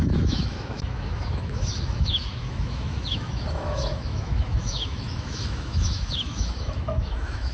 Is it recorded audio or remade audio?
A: remade